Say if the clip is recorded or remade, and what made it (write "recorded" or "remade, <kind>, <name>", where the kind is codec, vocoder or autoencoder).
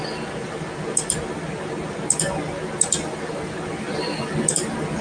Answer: recorded